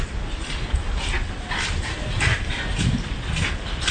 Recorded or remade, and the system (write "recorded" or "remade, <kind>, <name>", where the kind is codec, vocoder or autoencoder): recorded